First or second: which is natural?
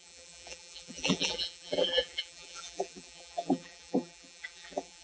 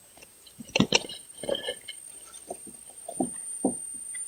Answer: second